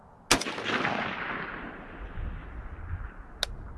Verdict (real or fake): real